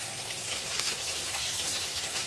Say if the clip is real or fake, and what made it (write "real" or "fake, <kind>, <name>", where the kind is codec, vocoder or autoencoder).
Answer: fake, codec, SNAC